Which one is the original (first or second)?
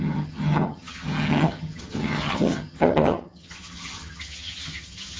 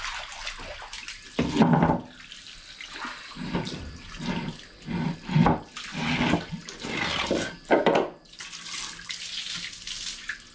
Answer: second